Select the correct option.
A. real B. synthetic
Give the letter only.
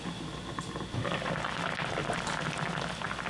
A